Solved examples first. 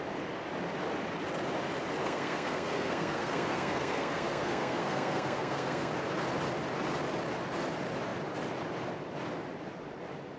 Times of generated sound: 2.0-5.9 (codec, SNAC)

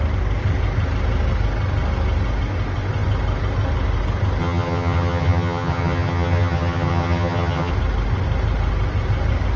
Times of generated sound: 4.4-7.7 (vocoder, HiFi-GAN)

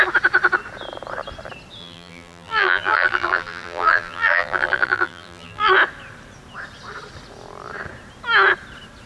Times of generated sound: 1.8-5.7 (vocoder, BigVGAN v2)

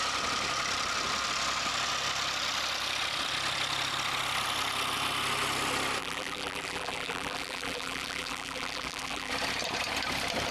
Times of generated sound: 6.0-9.3 (vocoder, BigVGAN v2)